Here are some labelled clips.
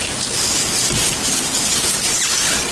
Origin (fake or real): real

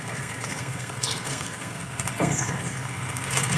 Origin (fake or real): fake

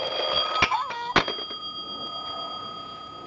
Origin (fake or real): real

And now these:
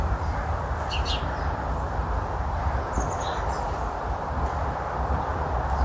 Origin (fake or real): real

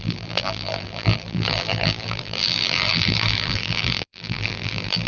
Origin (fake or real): fake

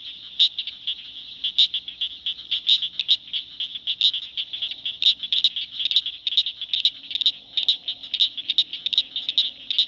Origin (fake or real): real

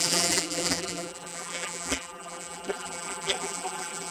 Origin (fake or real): fake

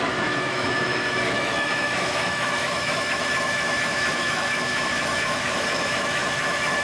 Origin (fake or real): fake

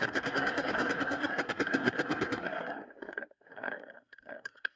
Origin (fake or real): fake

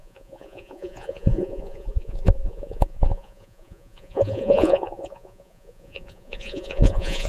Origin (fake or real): fake